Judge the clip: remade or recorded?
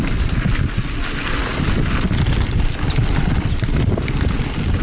recorded